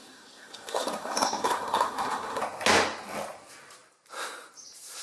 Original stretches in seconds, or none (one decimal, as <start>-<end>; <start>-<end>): 2.4-5.0